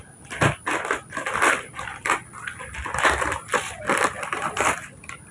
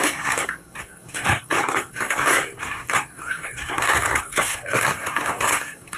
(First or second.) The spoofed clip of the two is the second